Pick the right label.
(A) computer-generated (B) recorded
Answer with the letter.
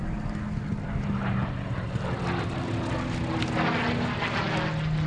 B